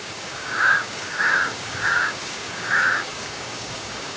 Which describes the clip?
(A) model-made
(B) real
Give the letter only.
A